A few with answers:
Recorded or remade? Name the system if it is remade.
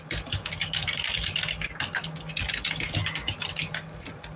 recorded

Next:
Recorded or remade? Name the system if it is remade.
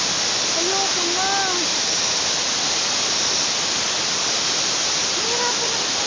recorded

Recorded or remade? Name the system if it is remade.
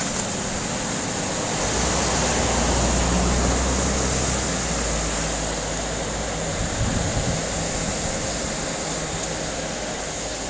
recorded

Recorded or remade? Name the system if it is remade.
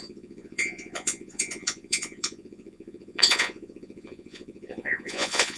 remade, vocoder, Vocos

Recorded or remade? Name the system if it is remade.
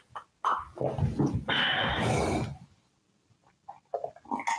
recorded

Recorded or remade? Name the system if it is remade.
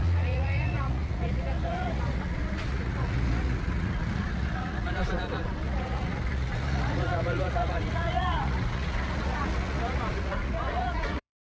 remade, vocoder, Vocos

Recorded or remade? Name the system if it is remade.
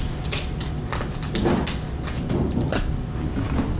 recorded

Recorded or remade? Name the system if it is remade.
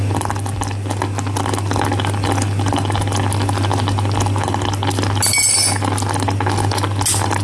recorded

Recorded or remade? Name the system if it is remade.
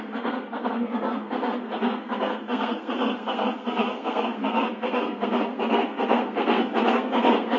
remade, codec, SNAC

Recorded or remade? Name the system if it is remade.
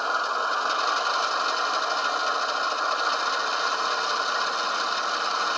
recorded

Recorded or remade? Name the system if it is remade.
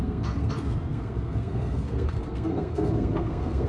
remade, codec, SNAC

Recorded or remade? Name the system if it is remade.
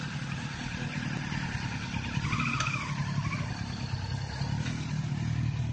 recorded